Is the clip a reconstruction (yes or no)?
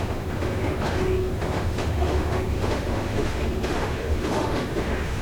yes